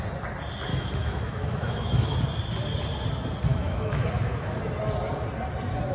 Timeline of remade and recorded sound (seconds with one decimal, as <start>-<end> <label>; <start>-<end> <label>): 0.0-0.7 recorded; 0.7-2.2 remade; 2.2-3.5 recorded; 3.5-4.6 remade; 4.6-5.9 recorded